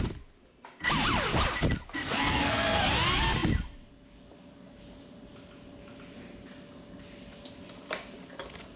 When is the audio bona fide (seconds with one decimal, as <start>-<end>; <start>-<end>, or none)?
0.0-2.0; 2.8-8.8